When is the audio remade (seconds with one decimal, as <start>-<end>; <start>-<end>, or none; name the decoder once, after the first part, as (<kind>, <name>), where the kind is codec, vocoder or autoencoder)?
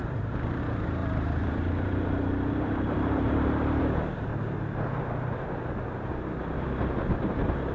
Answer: 0.0-4.3 (vocoder, BigVGAN v2); 6.4-7.7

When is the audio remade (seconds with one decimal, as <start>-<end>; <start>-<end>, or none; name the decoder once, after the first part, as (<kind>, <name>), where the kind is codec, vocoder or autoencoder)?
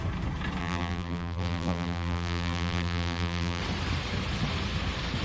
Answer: 0.6-3.6 (vocoder, BigVGAN v2)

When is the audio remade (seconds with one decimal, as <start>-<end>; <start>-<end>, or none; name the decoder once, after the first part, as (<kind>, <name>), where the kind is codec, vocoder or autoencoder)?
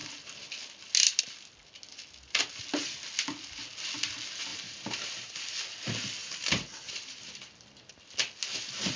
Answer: 4.5-5.4 (vocoder, BigVGAN v2); 6.2-7.3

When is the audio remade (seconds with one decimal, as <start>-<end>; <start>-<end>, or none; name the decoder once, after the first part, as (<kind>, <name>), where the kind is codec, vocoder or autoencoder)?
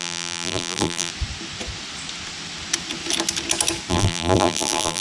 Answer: 0.0-1.1 (vocoder, BigVGAN v2); 3.9-5.0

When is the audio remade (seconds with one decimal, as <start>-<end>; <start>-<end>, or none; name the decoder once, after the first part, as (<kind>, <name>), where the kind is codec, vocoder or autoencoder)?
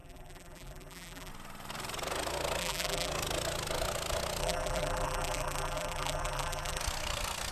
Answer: 0.0-1.3 (vocoder, BigVGAN v2); 2.6-3.1; 4.4-6.8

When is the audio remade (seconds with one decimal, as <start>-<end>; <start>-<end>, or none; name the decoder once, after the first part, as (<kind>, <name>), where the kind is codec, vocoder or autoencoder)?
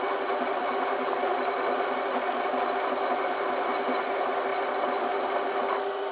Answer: 0.5-2.4 (vocoder, BigVGAN v2)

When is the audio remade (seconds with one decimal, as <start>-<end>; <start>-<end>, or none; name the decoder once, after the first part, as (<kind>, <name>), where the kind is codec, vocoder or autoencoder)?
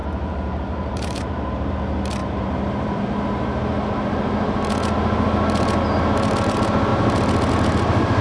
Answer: 0.0-1.7 (vocoder, BigVGAN v2); 2.2-3.0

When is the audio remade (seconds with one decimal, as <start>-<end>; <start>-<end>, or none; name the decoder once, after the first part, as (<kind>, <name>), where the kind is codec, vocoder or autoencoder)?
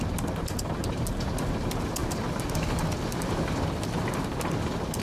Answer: none